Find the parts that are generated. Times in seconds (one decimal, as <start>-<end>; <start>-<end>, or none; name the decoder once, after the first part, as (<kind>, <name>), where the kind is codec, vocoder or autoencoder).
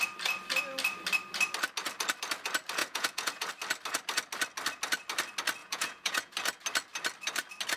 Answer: 2.8-3.5 (vocoder, Vocos); 5.6-6.3